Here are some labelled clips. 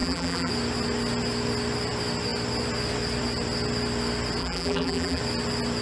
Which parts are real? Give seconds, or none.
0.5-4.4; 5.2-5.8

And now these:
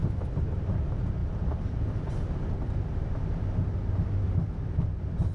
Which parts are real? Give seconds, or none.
0.0-1.2; 3.4-5.3